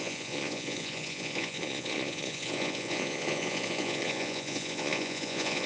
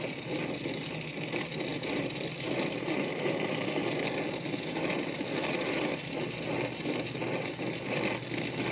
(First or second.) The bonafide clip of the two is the second